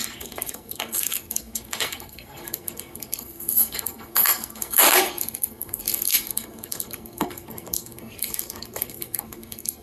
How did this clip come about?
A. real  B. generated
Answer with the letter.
B